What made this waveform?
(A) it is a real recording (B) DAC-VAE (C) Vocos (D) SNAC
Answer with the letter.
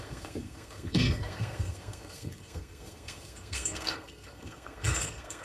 D